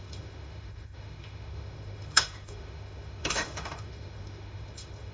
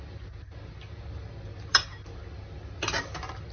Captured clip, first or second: second